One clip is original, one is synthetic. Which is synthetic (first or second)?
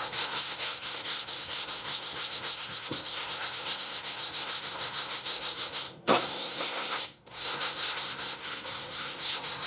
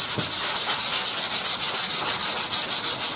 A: first